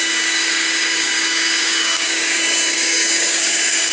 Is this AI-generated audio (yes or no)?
yes